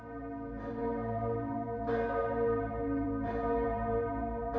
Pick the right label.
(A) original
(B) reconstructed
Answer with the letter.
B